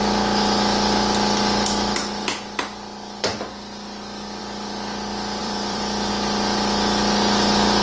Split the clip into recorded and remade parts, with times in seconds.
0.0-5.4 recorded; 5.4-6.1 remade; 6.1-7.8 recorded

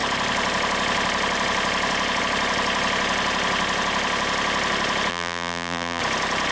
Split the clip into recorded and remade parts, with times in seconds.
0.0-5.1 recorded; 5.1-6.0 remade; 6.0-6.5 recorded

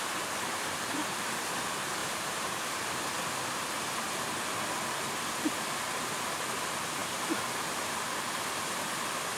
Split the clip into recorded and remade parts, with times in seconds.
0.0-2.0 recorded; 2.0-3.1 remade; 3.1-9.4 recorded

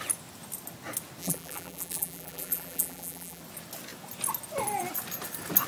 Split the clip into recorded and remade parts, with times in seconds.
0.0-1.2 recorded; 1.2-3.4 remade; 3.4-5.7 recorded

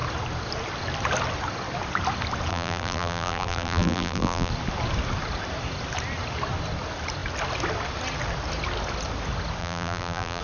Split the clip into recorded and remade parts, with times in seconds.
0.0-2.5 recorded; 2.5-4.5 remade; 4.5-9.6 recorded; 9.6-10.4 remade